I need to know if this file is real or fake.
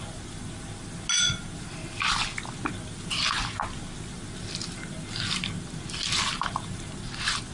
real